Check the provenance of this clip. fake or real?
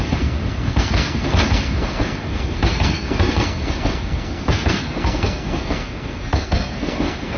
fake